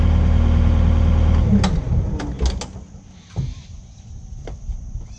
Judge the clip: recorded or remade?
recorded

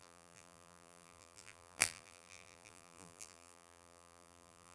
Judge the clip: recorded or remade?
remade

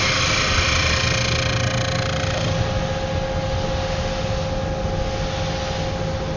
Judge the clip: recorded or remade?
recorded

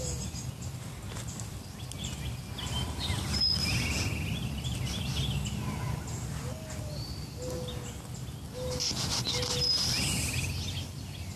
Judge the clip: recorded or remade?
recorded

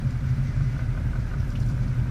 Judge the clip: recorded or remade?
remade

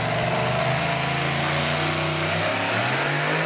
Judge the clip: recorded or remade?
recorded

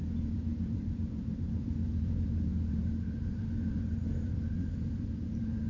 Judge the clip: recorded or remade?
remade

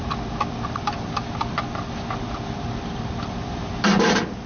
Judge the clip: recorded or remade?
remade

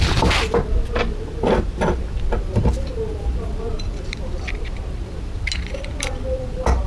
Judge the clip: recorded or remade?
remade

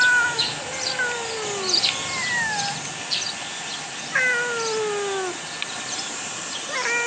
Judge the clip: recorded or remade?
recorded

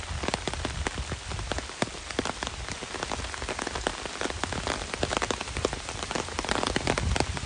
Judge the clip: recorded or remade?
recorded